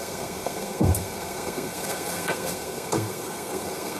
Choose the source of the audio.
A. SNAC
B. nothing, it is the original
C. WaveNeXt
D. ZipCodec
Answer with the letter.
A